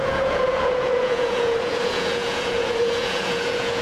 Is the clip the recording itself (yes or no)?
no